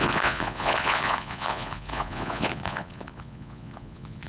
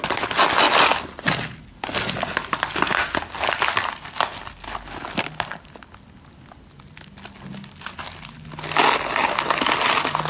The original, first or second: second